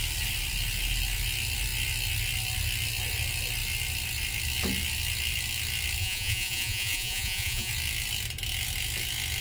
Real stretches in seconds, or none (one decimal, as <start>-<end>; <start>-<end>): 0.0-6.0; 7.7-9.4

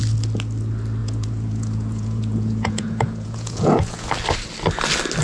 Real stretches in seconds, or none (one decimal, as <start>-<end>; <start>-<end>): 0.0-1.0; 4.1-5.2

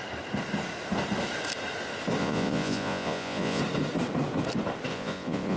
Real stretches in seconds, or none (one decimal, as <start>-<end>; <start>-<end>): 0.0-2.2; 3.6-4.9

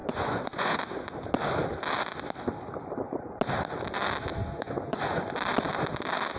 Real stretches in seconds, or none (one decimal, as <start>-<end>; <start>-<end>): 0.8-4.4; 5.2-6.4